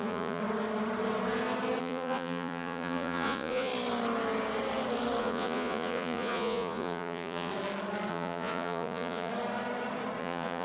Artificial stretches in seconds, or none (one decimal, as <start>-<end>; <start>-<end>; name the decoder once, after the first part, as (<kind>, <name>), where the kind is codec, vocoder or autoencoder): 0.0-0.4 (vocoder, Vocos); 1.8-3.7; 5.2-7.5; 8.1-9.3; 10.2-10.6